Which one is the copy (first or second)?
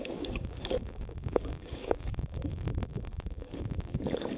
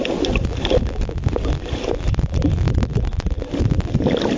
first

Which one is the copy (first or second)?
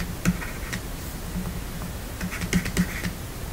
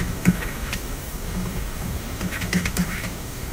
second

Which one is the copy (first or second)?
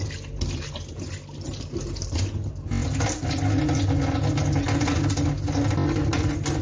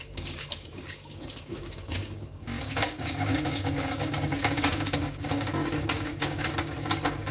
second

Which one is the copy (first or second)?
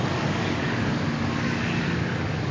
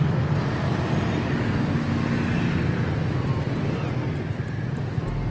first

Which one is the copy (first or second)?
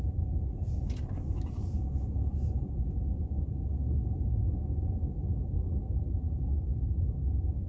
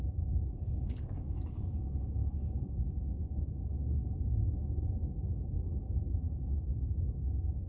second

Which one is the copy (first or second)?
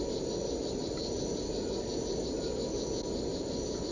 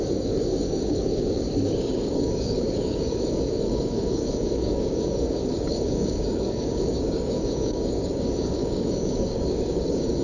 second